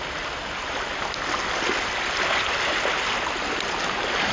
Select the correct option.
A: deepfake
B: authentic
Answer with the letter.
B